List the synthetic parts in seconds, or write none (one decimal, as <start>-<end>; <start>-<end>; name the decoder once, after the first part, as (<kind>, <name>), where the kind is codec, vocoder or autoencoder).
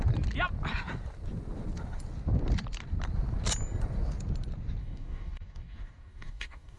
4.8-6.8 (codec, DAC)